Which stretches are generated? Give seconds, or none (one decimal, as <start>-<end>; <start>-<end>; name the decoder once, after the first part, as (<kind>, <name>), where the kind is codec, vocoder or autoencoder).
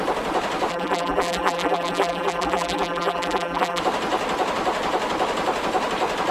0.7-3.8 (vocoder, BigVGAN v2)